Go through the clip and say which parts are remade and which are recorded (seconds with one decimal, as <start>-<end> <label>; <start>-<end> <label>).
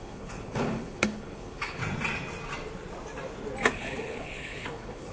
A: 0.0-1.8 remade; 1.8-3.7 recorded; 3.7-5.1 remade